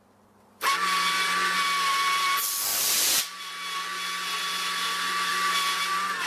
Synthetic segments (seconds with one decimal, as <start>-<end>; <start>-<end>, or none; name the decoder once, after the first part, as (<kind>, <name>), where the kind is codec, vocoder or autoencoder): 2.7-3.5 (vocoder, BigVGAN v2); 5.3-6.3

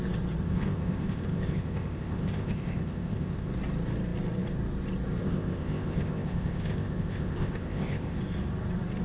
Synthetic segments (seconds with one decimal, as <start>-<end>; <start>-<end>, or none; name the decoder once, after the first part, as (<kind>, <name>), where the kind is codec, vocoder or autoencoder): 0.4-3.5 (codec, ZipCodec); 5.2-8.2

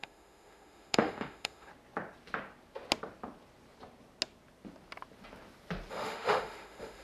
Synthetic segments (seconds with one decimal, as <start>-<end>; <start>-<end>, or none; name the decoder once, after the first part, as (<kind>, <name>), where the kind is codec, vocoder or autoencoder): 0.0-1.7 (autoencoder, DAC-VAE); 5.9-7.0